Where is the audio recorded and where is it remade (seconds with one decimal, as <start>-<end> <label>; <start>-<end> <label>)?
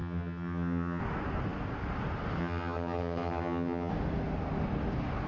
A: 0.0-1.0 remade; 1.0-2.4 recorded; 2.4-3.9 remade; 3.9-5.3 recorded